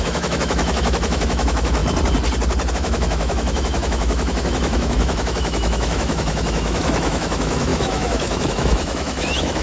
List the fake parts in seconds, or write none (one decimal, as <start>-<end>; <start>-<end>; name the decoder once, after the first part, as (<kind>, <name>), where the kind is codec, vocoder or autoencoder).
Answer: 0.0-1.8 (autoencoder, DAC-VAE); 2.7-9.6